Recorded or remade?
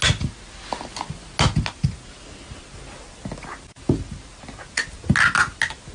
recorded